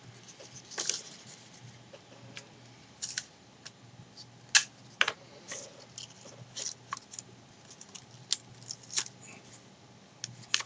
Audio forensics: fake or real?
real